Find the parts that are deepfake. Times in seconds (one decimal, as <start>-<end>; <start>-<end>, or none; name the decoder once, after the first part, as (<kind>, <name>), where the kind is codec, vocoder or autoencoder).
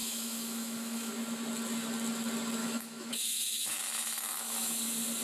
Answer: 0.0-1.1 (autoencoder, DAC-VAE); 2.6-4.8